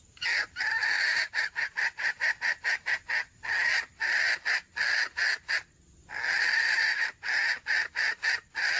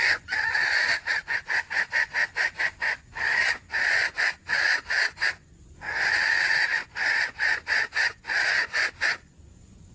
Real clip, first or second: first